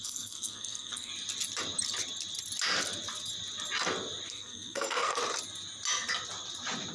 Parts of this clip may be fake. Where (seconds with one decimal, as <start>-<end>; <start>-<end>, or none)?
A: 0.0-1.1; 4.3-5.2